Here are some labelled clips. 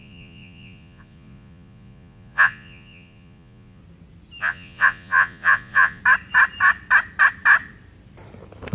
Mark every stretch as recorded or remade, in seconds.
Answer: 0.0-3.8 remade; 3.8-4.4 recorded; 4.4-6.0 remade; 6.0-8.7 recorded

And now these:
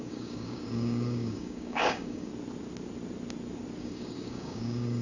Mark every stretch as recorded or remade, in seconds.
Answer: 0.0-2.3 remade; 2.3-3.8 recorded; 3.8-5.0 remade

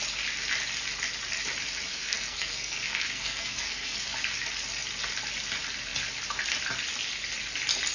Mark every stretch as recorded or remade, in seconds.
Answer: 0.0-1.9 recorded; 1.9-4.0 remade; 4.0-7.9 recorded